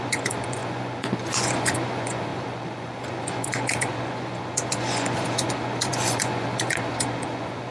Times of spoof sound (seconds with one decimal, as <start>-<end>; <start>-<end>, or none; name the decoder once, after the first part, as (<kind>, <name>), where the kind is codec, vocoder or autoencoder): 0.0-7.7 (vocoder, Vocos)